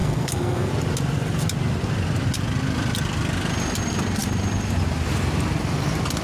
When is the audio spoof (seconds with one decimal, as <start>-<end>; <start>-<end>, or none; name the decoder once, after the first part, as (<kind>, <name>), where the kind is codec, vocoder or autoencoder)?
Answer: 0.0-0.7 (codec, SNAC)